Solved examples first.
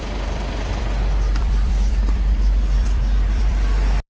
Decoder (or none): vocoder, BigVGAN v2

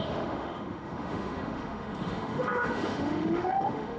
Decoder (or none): autoencoder, DAC-VAE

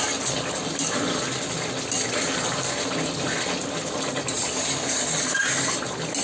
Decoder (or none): none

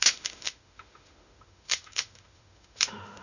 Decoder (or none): autoencoder, DAC-VAE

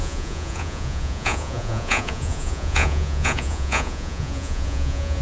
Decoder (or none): vocoder, Vocos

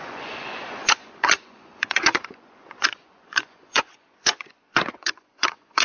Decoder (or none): vocoder, Vocos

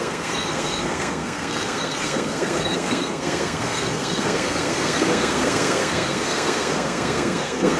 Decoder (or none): codec, SNAC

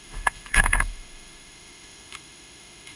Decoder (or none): autoencoder, DAC-VAE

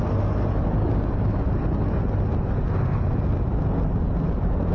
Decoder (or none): none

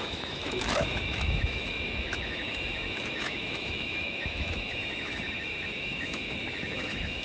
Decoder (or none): autoencoder, DAC-VAE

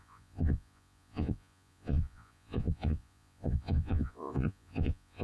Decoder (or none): vocoder, Vocos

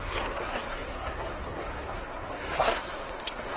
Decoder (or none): codec, SNAC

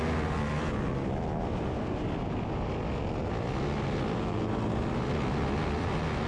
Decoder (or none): none